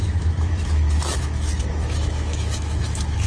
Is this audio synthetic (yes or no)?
yes